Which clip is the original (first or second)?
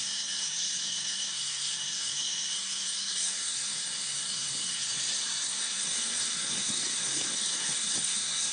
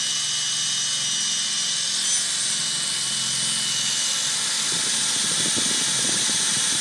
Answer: second